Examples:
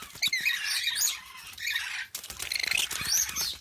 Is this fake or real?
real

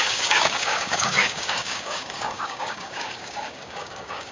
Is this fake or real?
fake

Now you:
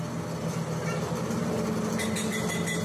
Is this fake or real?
real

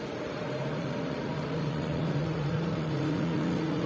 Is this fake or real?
fake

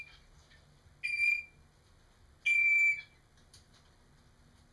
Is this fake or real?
real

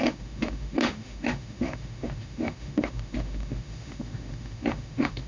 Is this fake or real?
fake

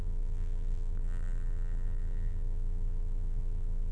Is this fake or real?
fake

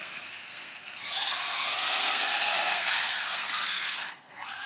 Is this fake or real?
fake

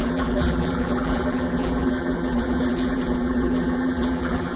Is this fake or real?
fake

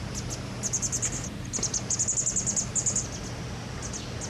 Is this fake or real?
real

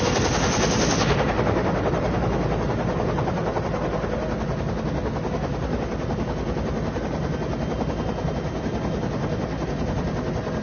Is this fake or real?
real